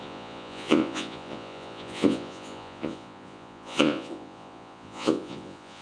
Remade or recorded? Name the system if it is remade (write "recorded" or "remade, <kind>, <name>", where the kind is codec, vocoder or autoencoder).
remade, vocoder, Vocos